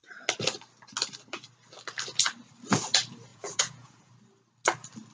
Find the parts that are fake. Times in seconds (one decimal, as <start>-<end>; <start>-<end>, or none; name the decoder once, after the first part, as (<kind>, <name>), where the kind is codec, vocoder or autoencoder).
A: 3.3-4.1 (vocoder, Vocos)